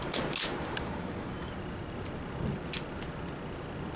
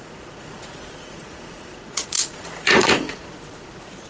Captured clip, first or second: first